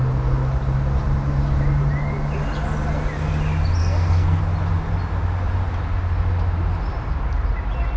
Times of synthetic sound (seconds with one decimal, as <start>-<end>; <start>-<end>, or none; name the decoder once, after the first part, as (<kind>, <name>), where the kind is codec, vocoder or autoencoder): 3.8-4.4 (codec, SNAC)